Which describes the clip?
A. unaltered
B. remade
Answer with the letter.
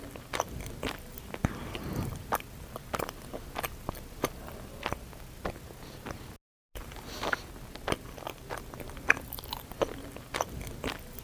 A